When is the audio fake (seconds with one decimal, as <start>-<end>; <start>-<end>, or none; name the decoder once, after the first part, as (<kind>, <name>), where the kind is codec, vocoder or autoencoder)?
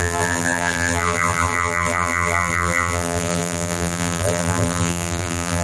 0.0-5.6 (vocoder, BigVGAN v2)